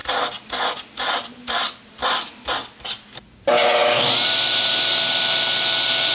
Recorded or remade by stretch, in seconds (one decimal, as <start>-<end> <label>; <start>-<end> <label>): 0.0-6.1 recorded

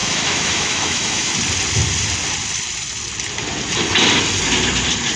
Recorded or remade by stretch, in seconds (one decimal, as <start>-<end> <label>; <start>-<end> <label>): 0.0-1.3 remade; 1.3-5.2 recorded

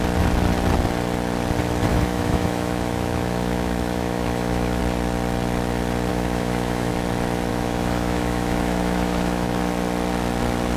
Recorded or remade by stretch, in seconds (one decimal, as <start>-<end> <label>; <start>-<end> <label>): 0.0-1.9 recorded; 1.9-4.8 remade; 4.8-6.1 recorded; 6.1-6.9 remade; 6.9-7.5 recorded; 7.5-9.6 remade; 9.6-10.8 recorded

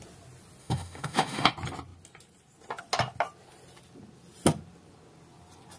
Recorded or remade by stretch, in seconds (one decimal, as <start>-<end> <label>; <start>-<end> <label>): 0.0-0.6 recorded; 0.6-1.5 remade; 1.5-5.8 recorded

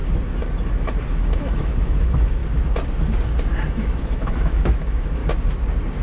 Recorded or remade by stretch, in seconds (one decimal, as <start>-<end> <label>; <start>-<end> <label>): 0.0-1.2 recorded; 1.2-2.4 remade; 2.4-3.7 recorded; 3.7-5.2 remade; 5.2-6.0 recorded

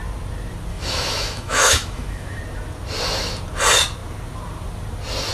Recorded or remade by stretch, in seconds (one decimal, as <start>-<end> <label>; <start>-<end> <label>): 0.0-0.7 recorded; 0.7-2.4 remade; 2.4-5.3 recorded

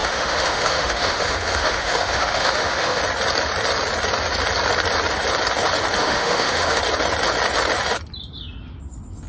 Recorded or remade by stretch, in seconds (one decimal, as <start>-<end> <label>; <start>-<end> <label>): 0.0-3.0 remade; 3.0-6.0 recorded; 6.0-6.8 remade; 6.8-9.3 recorded